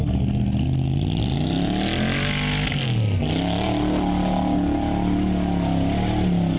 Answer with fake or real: real